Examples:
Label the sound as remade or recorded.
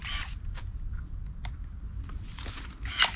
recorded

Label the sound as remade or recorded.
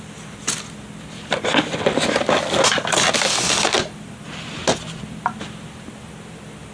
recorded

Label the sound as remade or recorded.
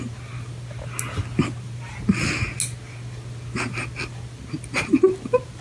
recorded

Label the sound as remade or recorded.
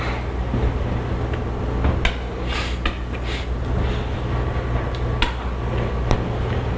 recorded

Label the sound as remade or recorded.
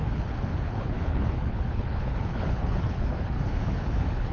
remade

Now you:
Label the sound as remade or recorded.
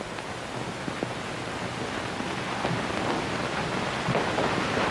recorded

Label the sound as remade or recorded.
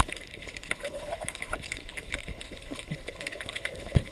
remade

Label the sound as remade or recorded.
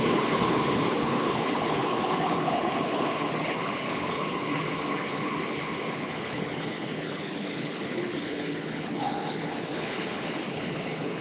remade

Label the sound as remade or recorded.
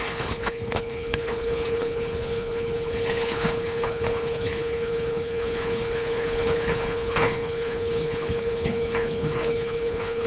remade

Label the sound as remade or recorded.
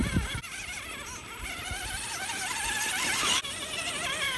recorded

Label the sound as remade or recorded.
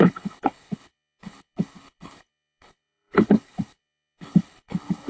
remade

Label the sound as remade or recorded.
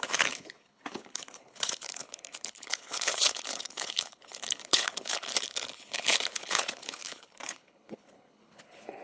remade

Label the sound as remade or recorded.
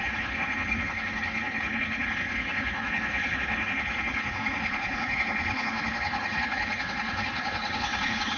remade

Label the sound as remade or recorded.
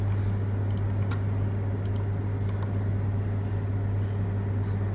recorded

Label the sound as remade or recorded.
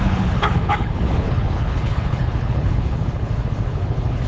remade